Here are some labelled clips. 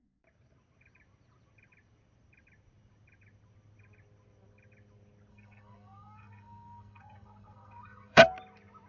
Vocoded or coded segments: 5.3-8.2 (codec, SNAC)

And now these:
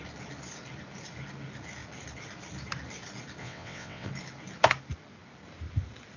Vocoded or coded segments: 3.4-4.1 (vocoder, WaveNeXt)

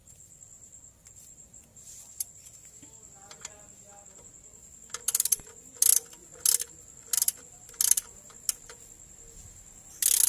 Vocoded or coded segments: 1.1-2.1 (vocoder, BigVGAN v2)

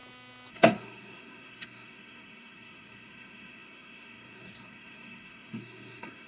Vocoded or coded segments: 0.5-6.3 (codec, SNAC)

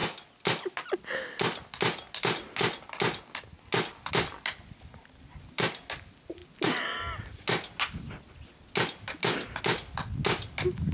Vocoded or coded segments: none

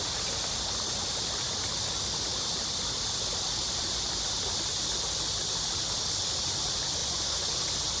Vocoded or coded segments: 7.0-7.5 (vocoder, Vocos)